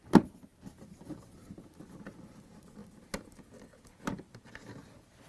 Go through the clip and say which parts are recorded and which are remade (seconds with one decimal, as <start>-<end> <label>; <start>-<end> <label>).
0.0-5.3 recorded